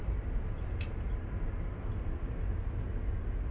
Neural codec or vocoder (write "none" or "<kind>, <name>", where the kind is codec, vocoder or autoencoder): none